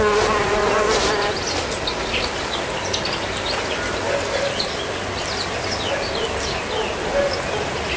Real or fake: real